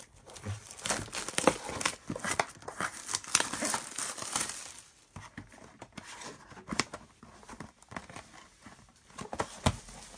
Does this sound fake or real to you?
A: real